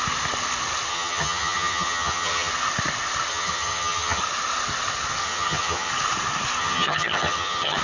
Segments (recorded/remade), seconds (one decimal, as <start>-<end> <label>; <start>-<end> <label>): 0.0-0.9 recorded; 0.9-2.5 remade; 2.5-3.3 recorded; 3.3-4.2 remade; 4.2-5.2 recorded; 5.2-5.9 remade; 5.9-6.6 recorded; 6.6-7.8 remade